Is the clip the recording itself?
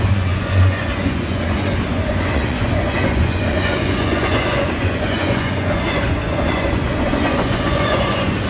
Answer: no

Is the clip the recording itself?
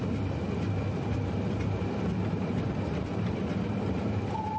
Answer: yes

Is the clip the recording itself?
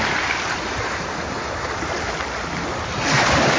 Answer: yes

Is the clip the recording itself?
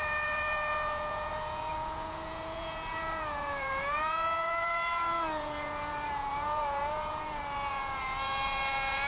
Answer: no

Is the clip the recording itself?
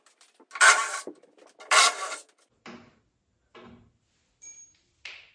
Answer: yes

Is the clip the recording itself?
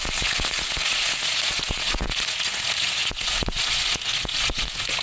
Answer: no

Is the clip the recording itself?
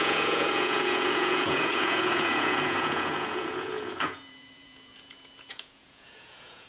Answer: no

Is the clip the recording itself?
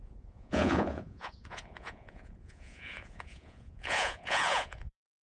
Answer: no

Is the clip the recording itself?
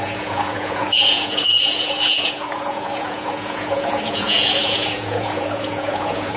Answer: no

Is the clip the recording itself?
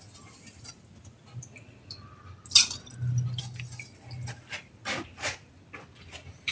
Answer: yes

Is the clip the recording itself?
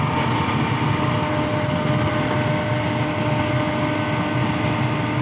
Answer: yes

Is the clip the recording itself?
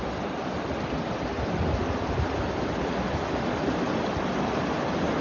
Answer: yes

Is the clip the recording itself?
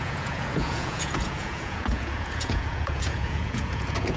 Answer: no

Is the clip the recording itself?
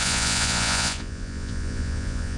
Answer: no